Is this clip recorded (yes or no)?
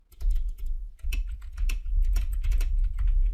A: no